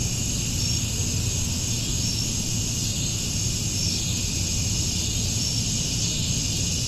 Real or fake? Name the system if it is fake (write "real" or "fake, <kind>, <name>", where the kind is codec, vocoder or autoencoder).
real